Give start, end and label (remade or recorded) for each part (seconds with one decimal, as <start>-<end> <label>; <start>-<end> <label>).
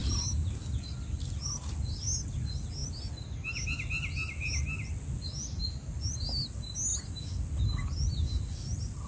0.0-9.1 recorded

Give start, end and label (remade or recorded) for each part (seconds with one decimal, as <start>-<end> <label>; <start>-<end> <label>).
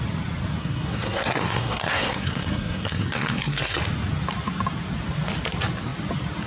0.0-0.6 recorded; 0.6-3.8 remade; 3.8-6.5 recorded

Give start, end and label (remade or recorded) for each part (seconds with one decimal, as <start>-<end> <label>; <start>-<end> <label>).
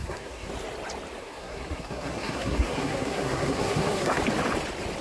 0.0-0.5 remade; 0.5-1.2 recorded; 1.2-4.2 remade; 4.2-5.0 recorded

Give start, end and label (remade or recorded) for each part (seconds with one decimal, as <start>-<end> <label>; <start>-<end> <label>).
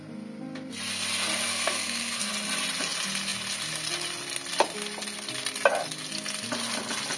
0.0-1.5 recorded; 1.5-2.3 remade; 2.3-7.2 recorded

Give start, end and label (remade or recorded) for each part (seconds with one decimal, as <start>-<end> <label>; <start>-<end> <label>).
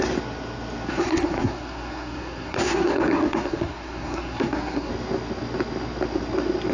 0.0-0.9 recorded; 0.9-4.9 remade; 4.9-6.7 recorded